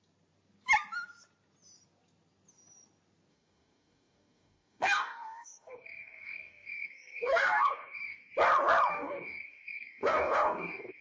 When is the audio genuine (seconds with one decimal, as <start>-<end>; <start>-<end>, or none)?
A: 0.0-3.3; 8.3-8.9